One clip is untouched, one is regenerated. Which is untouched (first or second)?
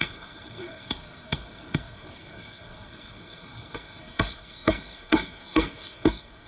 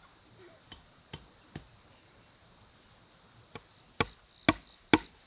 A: second